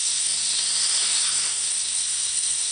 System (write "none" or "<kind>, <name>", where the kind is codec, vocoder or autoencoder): codec, SNAC